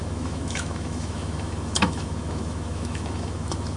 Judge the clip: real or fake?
fake